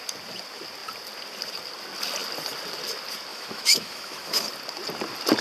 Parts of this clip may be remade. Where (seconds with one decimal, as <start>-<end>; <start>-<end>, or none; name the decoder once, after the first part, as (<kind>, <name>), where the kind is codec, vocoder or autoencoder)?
3.3-4.5 (autoencoder, DAC-VAE)